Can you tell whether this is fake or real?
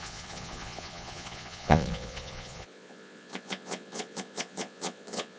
fake